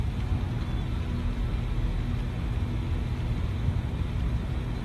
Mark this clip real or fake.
real